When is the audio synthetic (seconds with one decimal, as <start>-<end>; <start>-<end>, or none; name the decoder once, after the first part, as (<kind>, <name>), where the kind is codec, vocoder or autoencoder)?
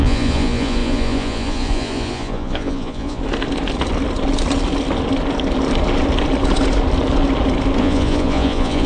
0.0-3.2 (vocoder, Vocos); 7.8-8.9